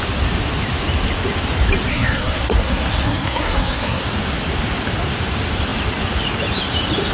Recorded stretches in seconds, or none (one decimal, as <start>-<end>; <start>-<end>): 0.0-1.9; 4.0-7.1